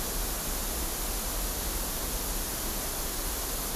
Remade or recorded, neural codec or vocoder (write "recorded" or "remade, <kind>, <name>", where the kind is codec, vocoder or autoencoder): recorded